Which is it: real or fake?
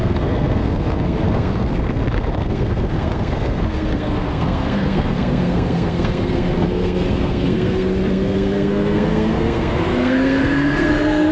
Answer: fake